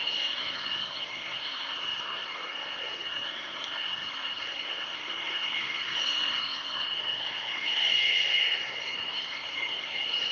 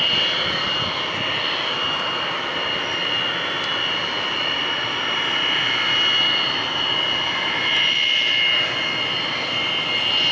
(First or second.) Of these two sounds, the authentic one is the second